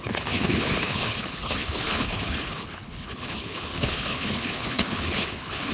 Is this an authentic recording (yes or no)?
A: no